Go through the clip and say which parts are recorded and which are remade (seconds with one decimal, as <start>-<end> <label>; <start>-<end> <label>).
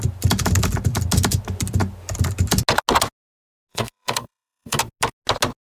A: 0.0-3.7 recorded; 3.7-4.8 remade; 4.8-5.8 recorded